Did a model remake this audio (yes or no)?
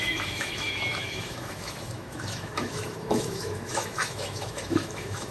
yes